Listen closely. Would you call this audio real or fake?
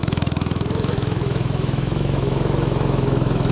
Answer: fake